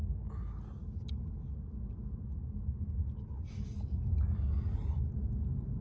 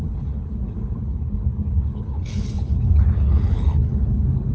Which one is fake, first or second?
second